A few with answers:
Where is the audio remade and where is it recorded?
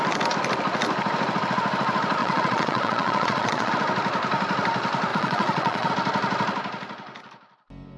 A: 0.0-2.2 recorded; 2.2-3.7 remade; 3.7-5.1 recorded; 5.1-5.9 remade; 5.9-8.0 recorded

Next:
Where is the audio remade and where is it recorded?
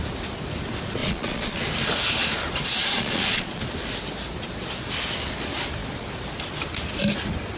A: 0.0-1.0 recorded; 1.0-1.6 remade; 1.6-2.8 recorded; 2.8-3.6 remade; 3.6-7.6 recorded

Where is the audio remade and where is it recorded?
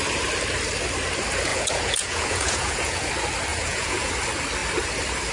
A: 0.0-1.5 recorded; 1.5-3.1 remade; 3.1-3.5 recorded; 3.5-4.1 remade; 4.1-5.3 recorded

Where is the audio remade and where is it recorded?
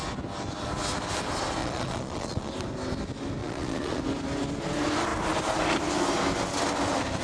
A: 0.0-1.6 recorded; 1.6-2.5 remade; 2.5-3.4 recorded; 3.4-4.0 remade; 4.0-7.2 recorded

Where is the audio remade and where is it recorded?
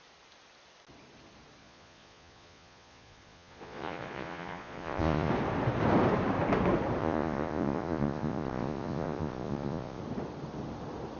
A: 0.0-1.6 recorded; 1.6-5.3 remade; 5.3-7.0 recorded; 7.0-10.0 remade; 10.0-11.2 recorded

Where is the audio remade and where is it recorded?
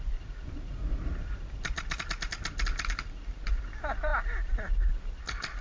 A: 0.0-5.6 recorded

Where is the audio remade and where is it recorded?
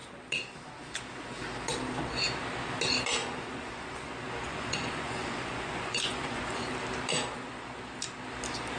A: 0.0-3.2 recorded; 3.2-6.7 remade; 6.7-8.8 recorded